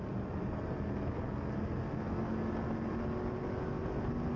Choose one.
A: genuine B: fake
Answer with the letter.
A